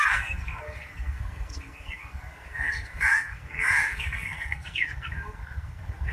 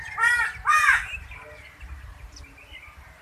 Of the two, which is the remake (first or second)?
first